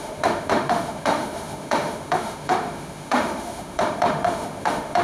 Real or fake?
fake